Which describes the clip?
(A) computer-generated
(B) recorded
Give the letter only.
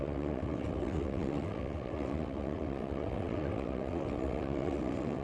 A